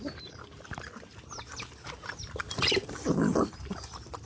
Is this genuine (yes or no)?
no